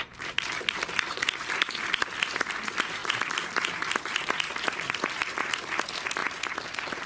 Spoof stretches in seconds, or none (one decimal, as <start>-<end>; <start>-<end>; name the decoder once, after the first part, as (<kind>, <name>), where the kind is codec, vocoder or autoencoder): none